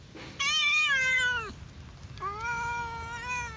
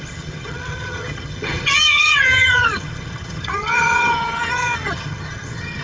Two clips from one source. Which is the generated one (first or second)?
second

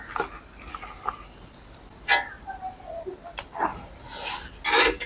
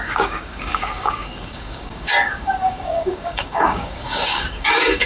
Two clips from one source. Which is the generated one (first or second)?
second